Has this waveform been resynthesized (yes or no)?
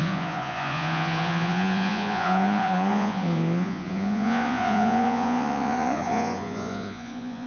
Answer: yes